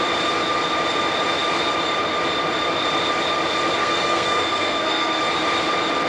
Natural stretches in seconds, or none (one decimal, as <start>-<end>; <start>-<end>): 0.0-3.8; 5.2-6.1